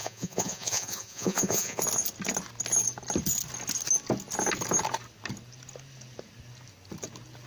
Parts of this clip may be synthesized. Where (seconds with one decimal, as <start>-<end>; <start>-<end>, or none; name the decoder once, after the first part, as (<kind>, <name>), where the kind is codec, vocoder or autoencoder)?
0.0-1.8 (vocoder, Vocos)